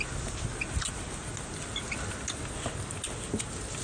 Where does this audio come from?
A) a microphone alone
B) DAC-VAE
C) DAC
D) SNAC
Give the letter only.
A